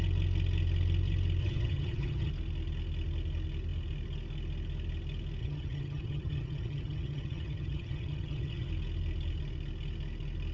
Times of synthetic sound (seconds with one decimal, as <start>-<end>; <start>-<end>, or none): 1.4-2.3; 5.4-8.7